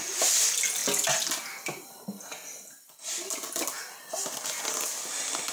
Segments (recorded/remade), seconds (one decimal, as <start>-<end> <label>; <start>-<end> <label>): 0.0-5.5 recorded